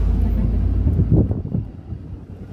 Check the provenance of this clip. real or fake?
real